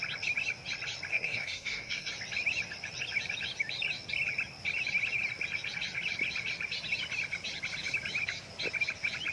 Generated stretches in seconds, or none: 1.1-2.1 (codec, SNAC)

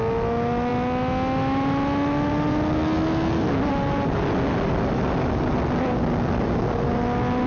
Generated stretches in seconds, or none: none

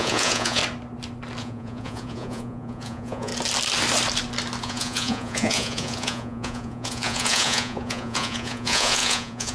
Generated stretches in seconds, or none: 0.0-0.6 (vocoder, Vocos); 1.4-3.3; 4.6-9.5

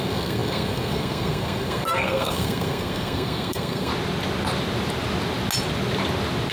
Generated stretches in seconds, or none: 0.0-3.9 (codec, SNAC)

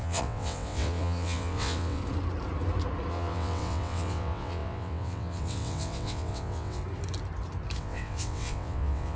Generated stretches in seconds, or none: 0.0-2.0 (vocoder, WaveNeXt); 3.1-6.8; 7.8-9.2